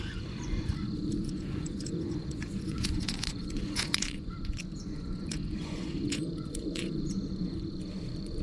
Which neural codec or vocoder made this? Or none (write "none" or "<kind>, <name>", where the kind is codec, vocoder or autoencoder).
vocoder, Vocos